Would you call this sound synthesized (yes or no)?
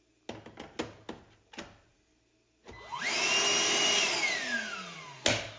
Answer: no